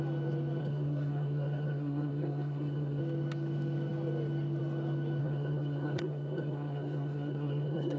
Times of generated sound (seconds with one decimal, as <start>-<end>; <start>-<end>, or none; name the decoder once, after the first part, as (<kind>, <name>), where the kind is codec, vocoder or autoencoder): 0.6-3.0 (codec, SNAC); 5.2-8.0